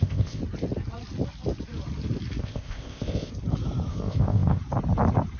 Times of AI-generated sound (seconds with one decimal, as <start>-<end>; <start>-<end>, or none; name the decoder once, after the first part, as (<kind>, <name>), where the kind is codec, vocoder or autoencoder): 0.0-0.4 (codec, ZipCodec); 2.4-3.3; 3.9-4.6